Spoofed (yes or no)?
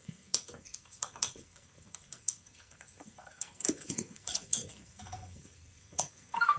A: yes